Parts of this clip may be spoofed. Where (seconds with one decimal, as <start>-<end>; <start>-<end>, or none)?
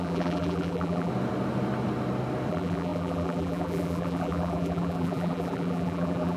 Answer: 0.0-1.1; 2.5-6.4